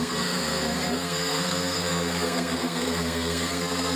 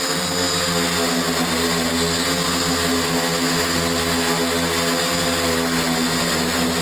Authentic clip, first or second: second